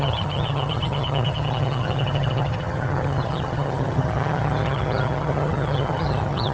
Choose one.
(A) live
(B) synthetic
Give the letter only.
B